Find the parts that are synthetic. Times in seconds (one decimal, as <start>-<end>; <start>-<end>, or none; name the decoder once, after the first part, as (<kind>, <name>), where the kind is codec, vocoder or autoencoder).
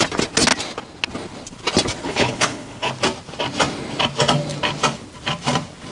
2.0-2.9 (codec, HILCodec)